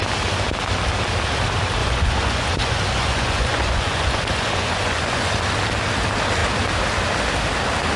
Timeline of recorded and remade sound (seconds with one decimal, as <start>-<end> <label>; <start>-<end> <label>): 0.0-1.8 recorded; 1.8-5.3 remade; 5.3-8.0 recorded